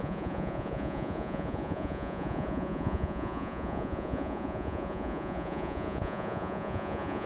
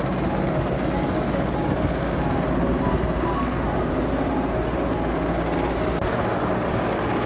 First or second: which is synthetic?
first